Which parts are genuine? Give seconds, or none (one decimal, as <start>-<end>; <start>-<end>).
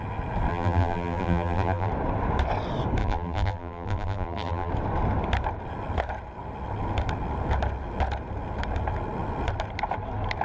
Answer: 0.0-0.5; 1.9-3.0; 4.7-10.4